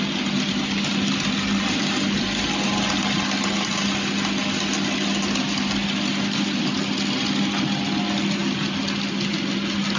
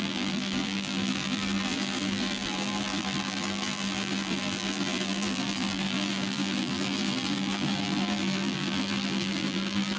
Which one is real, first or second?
first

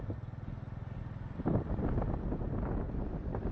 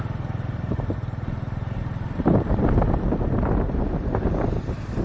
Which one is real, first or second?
first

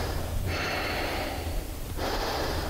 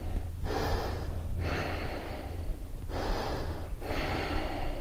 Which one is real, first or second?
second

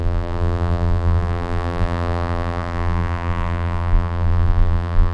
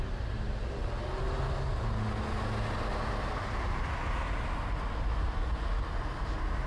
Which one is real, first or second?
second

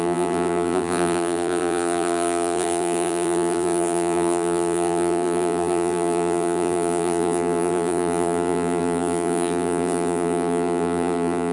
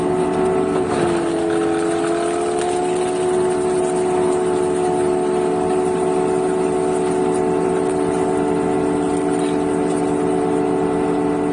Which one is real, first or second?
second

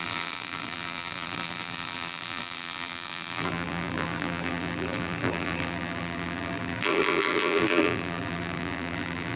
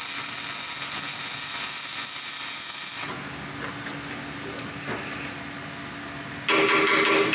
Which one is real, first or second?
second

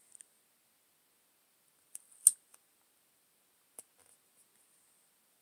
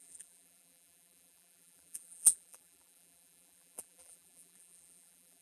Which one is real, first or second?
first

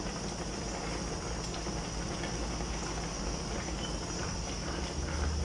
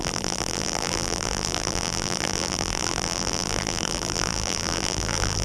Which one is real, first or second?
first